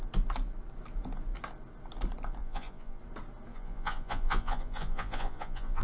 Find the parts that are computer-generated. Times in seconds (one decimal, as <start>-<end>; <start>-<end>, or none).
2.4-3.0; 3.5-5.8